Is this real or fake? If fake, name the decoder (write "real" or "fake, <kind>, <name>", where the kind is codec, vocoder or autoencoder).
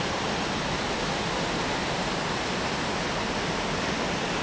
real